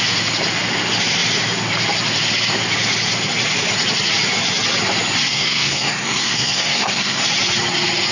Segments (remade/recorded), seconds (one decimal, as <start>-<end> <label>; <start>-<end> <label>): 0.0-5.3 recorded; 5.3-7.2 remade; 7.2-8.1 recorded